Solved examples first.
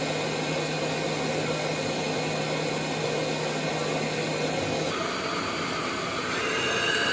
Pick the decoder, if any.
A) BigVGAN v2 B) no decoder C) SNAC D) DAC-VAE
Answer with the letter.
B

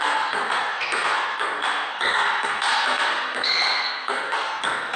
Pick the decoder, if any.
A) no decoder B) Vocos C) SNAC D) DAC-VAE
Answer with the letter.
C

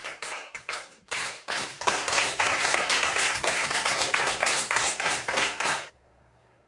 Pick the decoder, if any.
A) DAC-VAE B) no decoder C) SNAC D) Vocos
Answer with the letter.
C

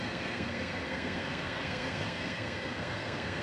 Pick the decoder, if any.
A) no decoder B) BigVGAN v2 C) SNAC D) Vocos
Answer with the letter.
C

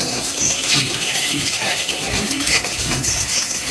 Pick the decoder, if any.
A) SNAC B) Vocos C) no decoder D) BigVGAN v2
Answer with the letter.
A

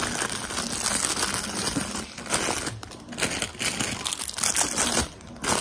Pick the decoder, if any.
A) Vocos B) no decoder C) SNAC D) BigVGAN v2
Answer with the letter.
B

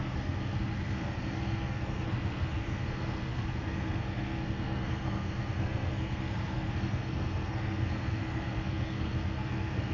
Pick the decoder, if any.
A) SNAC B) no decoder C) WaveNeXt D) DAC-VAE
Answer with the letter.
A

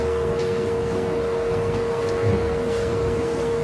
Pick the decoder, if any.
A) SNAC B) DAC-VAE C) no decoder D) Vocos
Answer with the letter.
A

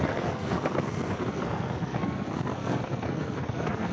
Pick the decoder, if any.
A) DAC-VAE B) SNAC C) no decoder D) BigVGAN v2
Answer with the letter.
B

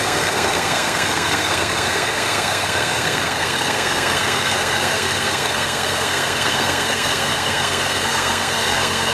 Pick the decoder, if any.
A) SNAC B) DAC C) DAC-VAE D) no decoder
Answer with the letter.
A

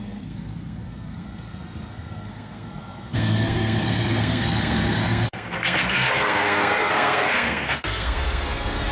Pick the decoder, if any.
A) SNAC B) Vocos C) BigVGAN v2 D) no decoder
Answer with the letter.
A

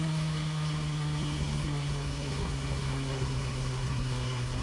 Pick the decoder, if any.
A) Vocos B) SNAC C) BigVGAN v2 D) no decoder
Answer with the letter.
B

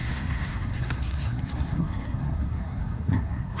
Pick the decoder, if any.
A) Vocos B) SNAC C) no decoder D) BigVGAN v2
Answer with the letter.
B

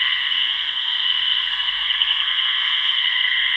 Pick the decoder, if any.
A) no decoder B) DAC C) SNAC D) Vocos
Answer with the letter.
C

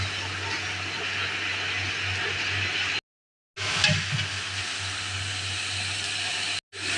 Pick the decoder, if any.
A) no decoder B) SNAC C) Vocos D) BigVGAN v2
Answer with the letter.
A